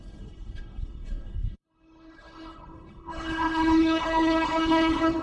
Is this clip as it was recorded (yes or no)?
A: no